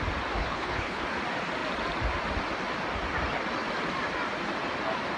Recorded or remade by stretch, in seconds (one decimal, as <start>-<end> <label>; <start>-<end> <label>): 0.0-0.4 recorded; 0.4-1.0 remade; 1.0-5.2 recorded